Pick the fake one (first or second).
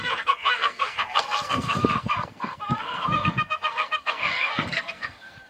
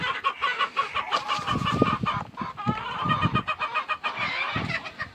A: first